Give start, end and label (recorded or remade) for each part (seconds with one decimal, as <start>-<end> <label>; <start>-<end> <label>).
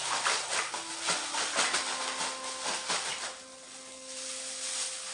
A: 0.0-5.1 recorded